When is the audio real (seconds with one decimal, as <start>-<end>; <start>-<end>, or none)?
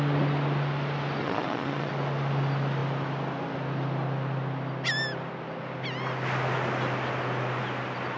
0.0-1.2; 1.9-8.2